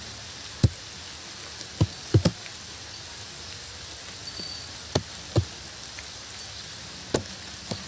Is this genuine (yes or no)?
yes